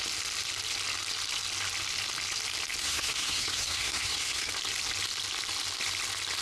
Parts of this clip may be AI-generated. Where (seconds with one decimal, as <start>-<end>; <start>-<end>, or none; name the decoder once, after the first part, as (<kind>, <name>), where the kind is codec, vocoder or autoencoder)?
2.8-4.5 (codec, SNAC)